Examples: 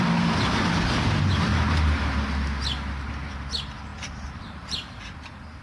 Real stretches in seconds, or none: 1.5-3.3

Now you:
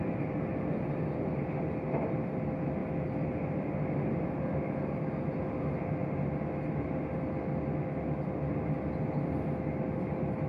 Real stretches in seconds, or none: 0.0-10.5

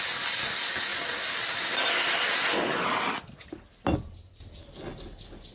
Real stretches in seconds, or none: 0.0-0.9; 4.2-5.5

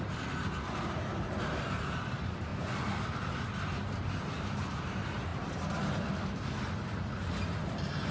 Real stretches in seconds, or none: 0.0-8.1